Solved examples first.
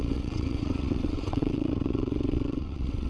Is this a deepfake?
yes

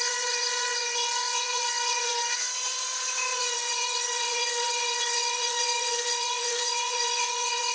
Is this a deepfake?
yes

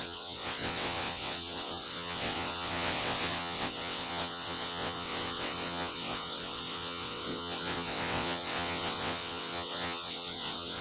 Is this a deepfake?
yes